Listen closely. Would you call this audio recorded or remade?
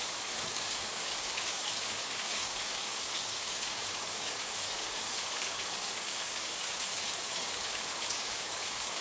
remade